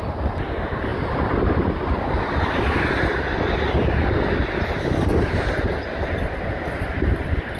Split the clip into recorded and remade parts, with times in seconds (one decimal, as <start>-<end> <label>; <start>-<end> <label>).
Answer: 0.0-7.6 recorded